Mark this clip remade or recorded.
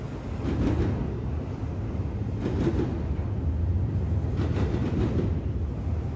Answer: recorded